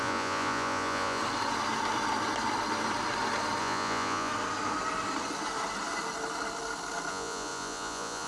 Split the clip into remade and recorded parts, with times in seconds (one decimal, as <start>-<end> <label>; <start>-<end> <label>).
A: 0.0-1.2 remade; 1.2-3.6 recorded; 3.6-4.3 remade; 4.3-7.1 recorded; 7.1-8.3 remade